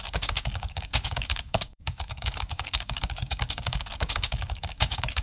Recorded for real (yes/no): no